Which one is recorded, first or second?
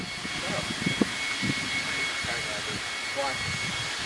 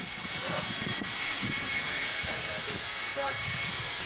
first